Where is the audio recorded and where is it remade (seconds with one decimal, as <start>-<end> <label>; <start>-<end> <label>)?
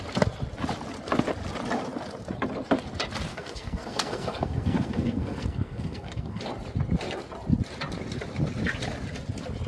0.0-3.3 recorded; 3.3-6.4 remade; 6.4-9.7 recorded